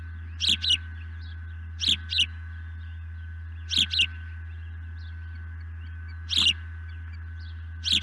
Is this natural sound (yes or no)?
yes